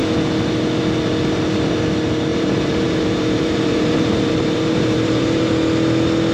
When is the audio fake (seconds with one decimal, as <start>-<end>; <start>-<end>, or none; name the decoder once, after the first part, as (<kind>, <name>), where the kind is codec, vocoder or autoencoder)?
2.3-5.5 (vocoder, BigVGAN v2)